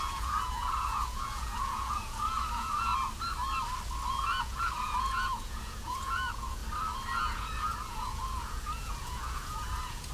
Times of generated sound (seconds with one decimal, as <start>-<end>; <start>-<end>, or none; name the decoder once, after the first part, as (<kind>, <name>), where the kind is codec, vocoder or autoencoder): 0.0-2.9 (vocoder, Vocos); 4.4-6.6; 7.2-10.1